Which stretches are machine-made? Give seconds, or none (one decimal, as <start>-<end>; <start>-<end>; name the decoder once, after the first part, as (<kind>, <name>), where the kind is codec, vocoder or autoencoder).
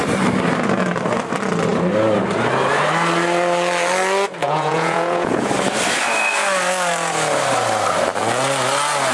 4.4-5.5 (vocoder, Vocos)